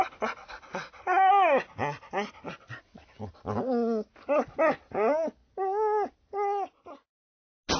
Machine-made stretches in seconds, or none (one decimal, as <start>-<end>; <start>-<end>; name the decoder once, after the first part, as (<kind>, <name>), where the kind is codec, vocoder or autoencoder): none